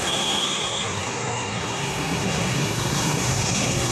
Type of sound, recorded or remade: remade